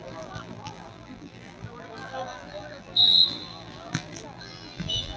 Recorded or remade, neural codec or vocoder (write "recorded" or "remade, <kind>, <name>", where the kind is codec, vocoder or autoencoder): remade, vocoder, BigVGAN v2